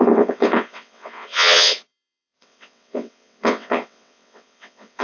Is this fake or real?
fake